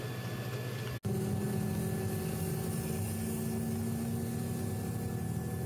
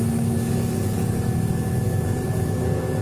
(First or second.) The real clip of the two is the first